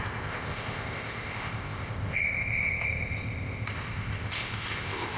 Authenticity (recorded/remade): remade